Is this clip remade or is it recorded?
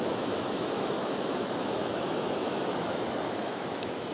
remade